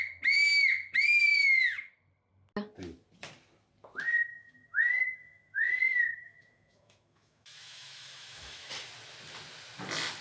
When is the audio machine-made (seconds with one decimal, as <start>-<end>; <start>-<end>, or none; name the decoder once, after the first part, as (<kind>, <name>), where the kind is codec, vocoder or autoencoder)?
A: 4.3-8.7 (autoencoder, DAC-VAE)